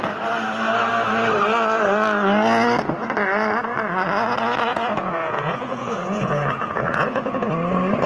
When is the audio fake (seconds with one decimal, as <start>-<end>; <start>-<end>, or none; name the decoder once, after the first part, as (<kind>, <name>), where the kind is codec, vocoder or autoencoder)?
4.7-7.5 (vocoder, Vocos)

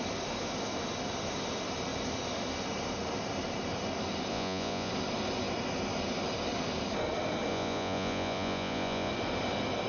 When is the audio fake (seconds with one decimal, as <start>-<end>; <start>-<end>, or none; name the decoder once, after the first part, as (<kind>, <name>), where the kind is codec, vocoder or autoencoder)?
4.3-4.9 (vocoder, Vocos); 7.5-9.1

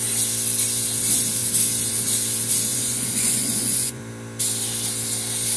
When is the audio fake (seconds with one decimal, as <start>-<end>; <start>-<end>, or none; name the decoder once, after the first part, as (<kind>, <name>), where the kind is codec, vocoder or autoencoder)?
2.7-4.0 (vocoder, Vocos)